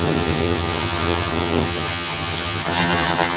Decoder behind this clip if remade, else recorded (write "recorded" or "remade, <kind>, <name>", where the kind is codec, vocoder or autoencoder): remade, vocoder, HiFi-GAN